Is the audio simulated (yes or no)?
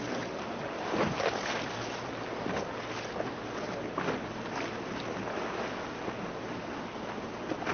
no